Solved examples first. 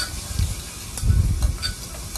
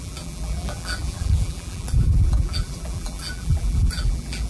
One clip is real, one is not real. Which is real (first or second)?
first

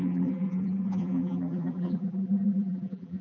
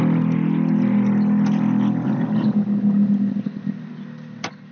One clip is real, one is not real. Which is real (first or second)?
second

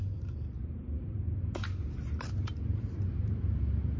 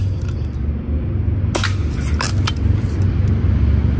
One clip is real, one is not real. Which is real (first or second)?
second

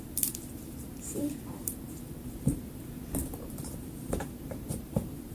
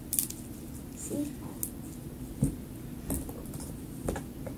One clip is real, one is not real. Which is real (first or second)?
second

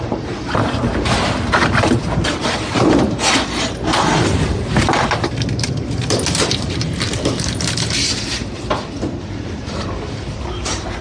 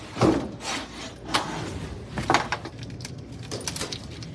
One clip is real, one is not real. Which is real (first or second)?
second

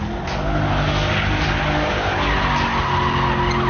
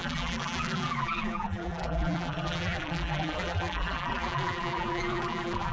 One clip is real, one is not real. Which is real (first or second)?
first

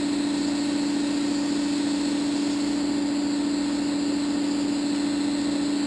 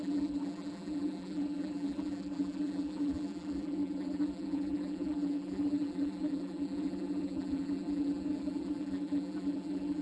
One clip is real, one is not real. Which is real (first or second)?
first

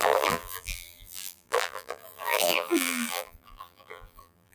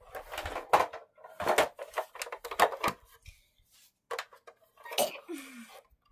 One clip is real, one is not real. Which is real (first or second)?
second